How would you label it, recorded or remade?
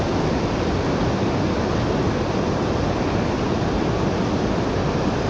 recorded